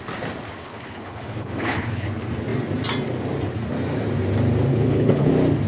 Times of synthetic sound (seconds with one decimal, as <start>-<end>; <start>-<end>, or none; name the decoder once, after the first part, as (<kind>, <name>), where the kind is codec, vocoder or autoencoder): 0.6-2.1 (codec, HILCodec); 4.7-5.3